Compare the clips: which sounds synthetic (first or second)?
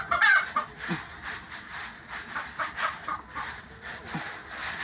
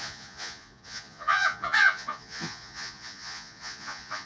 second